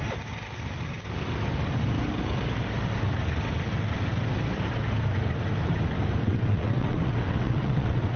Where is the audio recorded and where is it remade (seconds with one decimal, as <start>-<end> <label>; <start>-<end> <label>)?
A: 0.0-6.2 recorded; 6.2-8.2 remade